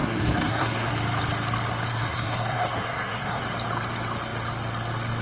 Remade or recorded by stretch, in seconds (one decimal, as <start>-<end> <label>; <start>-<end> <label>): 0.0-0.9 remade; 0.9-1.9 recorded; 1.9-3.4 remade; 3.4-5.2 recorded